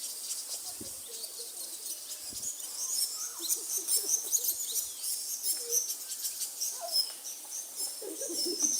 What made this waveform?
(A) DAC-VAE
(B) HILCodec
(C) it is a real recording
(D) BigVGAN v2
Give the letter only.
C